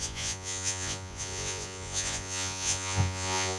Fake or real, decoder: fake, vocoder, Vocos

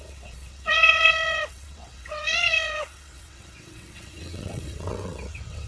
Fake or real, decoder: fake, vocoder, WaveNeXt